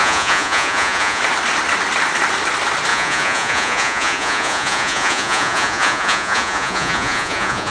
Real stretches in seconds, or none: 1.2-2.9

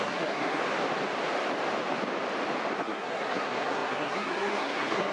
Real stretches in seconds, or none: 0.6-2.8

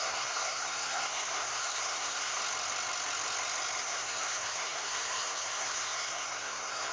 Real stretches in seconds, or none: 2.4-3.8

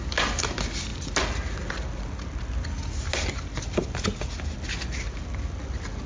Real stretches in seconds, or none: 0.0-6.1

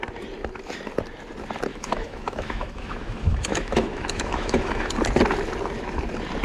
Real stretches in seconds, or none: 0.0-1.7; 4.9-6.4